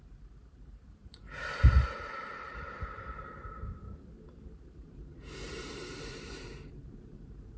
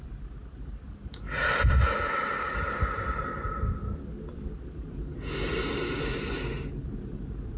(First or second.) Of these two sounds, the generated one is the first